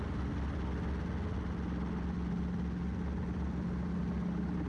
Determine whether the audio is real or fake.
real